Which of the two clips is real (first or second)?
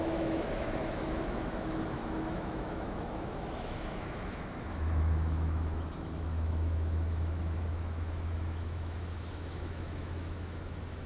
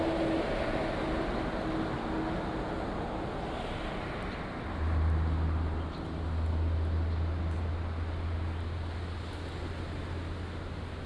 second